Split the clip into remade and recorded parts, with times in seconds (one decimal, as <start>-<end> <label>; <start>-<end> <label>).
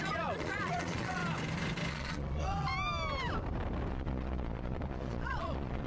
0.0-1.2 remade; 1.2-1.9 recorded; 1.9-2.7 remade; 2.7-3.9 recorded; 3.9-5.9 remade